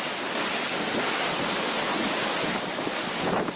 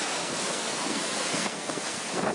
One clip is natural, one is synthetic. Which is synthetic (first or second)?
second